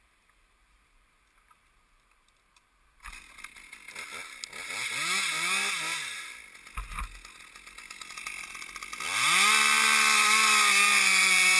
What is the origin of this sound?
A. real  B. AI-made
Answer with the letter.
A